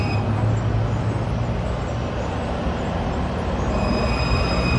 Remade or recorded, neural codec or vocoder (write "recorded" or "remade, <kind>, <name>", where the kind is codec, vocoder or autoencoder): recorded